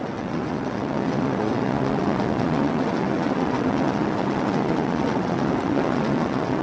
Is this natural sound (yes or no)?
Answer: no